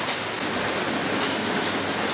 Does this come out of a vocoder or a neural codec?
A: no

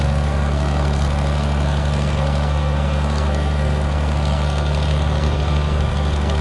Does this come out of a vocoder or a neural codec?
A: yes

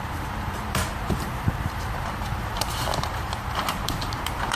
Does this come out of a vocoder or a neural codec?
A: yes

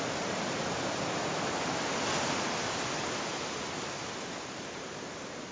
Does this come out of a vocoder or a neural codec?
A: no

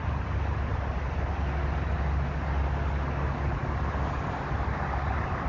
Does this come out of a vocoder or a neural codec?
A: no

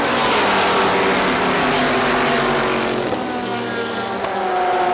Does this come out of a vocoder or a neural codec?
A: no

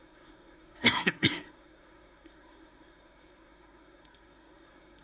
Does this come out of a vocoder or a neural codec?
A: yes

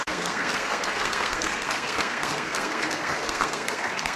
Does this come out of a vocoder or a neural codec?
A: yes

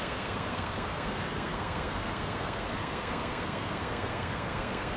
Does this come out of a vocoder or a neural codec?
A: yes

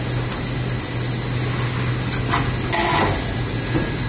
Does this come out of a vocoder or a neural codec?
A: no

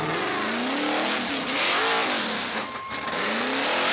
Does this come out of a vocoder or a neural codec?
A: no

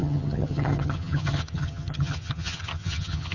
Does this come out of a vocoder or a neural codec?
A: yes